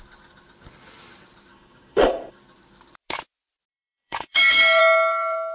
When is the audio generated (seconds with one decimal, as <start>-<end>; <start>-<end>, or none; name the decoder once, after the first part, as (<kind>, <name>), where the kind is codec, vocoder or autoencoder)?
1.5-2.4 (codec, DAC); 3.7-4.8